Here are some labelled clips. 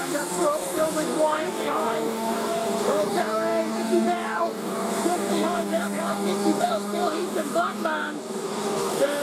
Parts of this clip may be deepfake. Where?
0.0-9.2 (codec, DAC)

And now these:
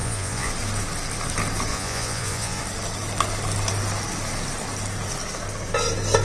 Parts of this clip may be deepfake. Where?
0.0-0.5 (vocoder, Vocos); 1.7-2.6

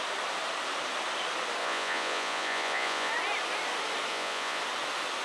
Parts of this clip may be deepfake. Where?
1.6-3.1 (vocoder, Vocos); 4.1-4.6

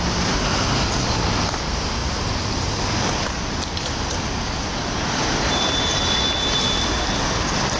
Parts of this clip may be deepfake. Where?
none